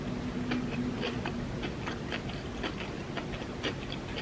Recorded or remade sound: recorded